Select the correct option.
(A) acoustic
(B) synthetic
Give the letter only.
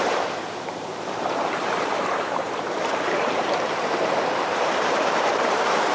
B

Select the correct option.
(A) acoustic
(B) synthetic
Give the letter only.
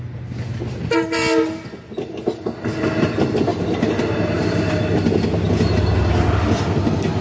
A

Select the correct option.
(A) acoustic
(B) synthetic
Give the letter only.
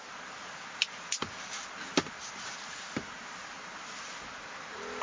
A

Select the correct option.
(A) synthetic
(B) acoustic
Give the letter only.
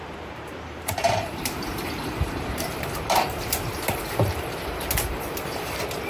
A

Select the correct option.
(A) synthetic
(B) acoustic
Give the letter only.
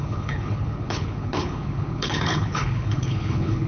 A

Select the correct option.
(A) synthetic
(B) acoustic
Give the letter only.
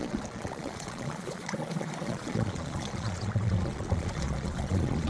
A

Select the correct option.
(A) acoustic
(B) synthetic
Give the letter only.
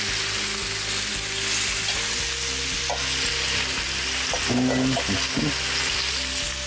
A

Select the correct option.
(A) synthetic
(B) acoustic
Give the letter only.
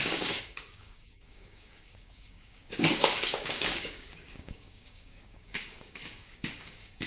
A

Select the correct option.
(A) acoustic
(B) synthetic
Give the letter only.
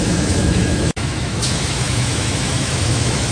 B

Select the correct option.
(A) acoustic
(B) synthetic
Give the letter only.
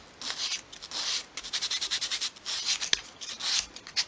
A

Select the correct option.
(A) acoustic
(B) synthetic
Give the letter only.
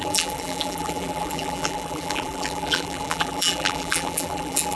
B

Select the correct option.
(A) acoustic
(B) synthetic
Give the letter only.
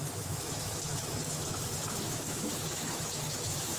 B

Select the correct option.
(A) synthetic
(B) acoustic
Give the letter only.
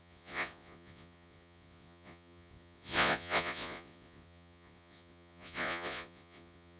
A